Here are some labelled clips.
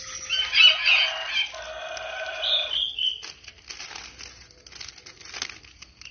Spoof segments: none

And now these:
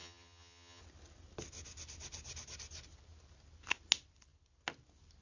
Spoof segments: 0.0-0.8